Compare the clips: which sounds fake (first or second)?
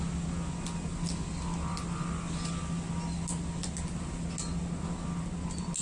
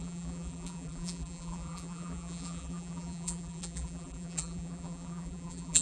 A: second